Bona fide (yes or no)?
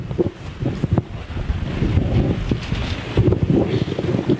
yes